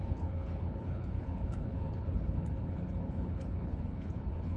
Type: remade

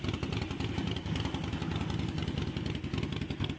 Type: recorded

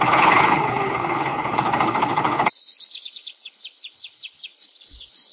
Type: remade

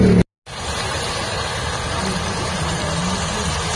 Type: recorded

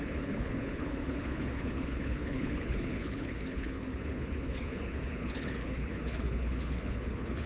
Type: remade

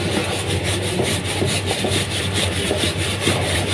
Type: recorded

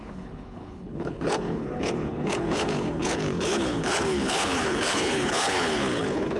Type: remade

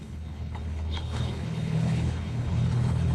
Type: remade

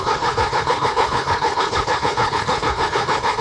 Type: remade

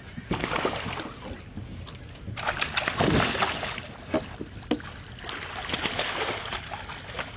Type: recorded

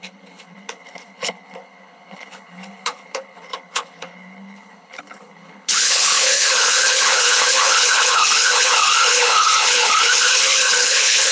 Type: remade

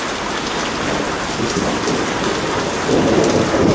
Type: recorded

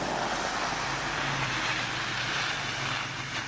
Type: recorded